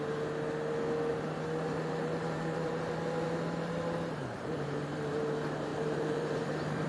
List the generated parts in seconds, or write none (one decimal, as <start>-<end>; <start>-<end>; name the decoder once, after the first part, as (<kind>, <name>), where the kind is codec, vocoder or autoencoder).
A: 1.1-5.2 (vocoder, BigVGAN v2); 5.7-6.9